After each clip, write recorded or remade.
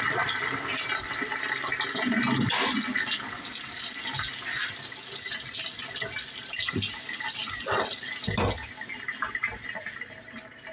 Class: recorded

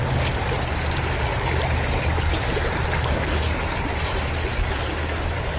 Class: recorded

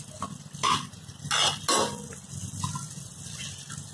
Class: recorded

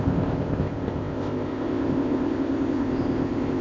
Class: remade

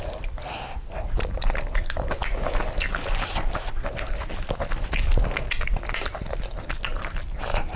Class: recorded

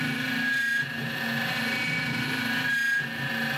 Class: recorded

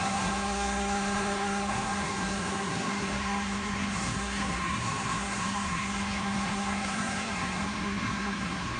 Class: remade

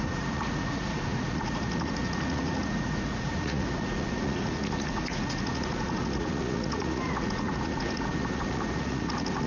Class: remade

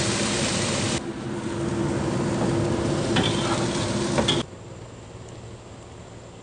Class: recorded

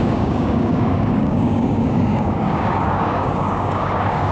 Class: remade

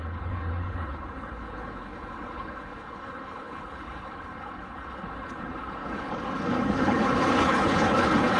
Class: remade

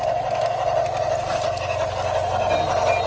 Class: recorded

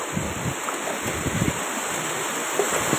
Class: recorded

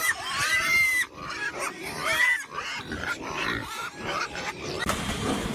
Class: remade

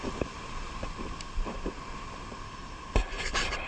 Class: remade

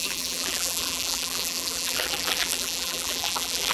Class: remade